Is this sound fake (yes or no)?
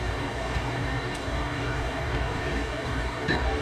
yes